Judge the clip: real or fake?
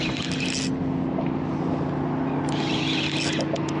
real